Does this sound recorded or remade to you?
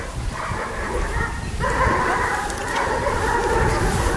recorded